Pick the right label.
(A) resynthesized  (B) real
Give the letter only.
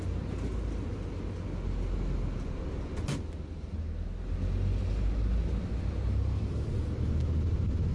B